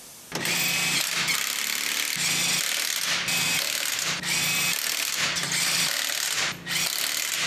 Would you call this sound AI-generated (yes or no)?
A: no